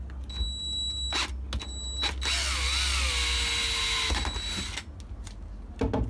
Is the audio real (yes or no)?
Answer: yes